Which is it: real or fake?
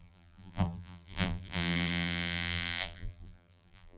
fake